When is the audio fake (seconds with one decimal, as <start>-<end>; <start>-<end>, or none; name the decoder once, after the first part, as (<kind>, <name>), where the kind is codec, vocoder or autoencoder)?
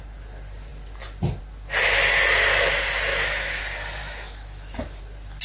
3.1-3.6 (autoencoder, DAC-VAE); 4.0-5.0